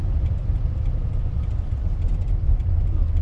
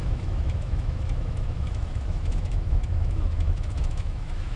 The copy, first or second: second